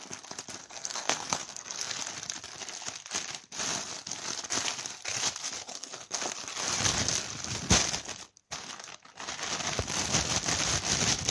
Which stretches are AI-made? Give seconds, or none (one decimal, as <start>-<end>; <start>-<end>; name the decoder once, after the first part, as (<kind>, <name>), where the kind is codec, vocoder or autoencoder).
0.6-2.0 (codec, SNAC); 5.7-6.2